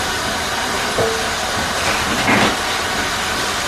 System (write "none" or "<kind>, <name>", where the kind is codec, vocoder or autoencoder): none